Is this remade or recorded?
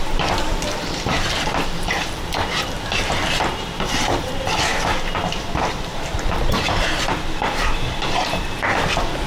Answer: remade